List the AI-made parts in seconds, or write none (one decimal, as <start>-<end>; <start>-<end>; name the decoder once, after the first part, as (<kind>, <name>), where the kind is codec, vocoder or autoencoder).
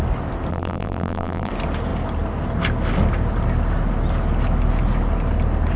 0.5-1.5 (vocoder, BigVGAN v2)